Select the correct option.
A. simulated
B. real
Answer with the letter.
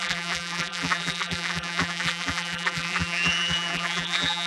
A